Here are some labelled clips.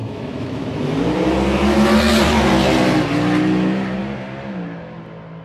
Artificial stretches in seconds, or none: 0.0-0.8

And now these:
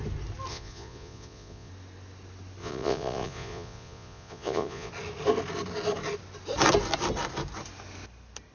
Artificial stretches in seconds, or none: 0.5-1.7; 2.6-4.9